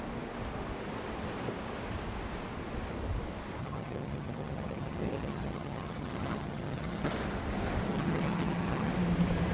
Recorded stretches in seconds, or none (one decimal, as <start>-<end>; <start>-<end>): 0.0-3.6; 7.1-7.9; 8.9-9.5